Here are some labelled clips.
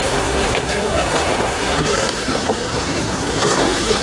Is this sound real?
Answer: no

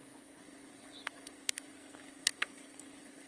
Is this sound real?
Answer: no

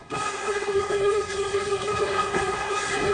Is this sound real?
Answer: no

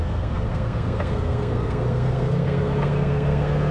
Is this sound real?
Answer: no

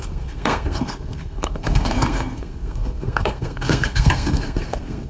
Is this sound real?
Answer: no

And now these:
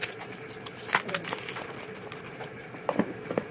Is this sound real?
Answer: yes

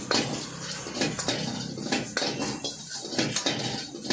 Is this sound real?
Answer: yes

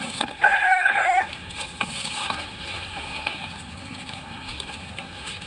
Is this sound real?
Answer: no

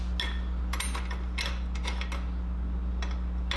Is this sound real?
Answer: yes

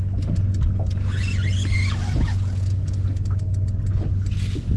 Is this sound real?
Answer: yes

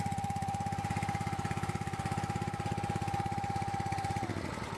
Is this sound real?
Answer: yes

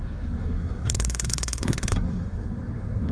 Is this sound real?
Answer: no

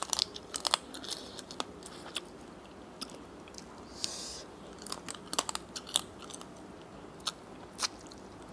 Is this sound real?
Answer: yes